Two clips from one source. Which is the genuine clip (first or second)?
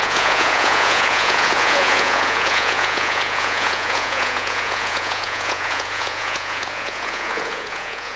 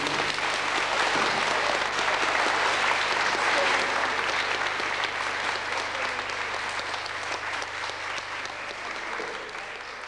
second